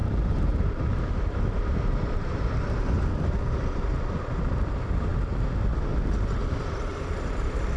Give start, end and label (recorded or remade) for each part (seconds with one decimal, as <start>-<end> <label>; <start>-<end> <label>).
0.0-4.0 remade; 4.0-6.9 recorded; 6.9-7.8 remade